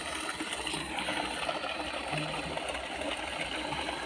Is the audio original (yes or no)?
yes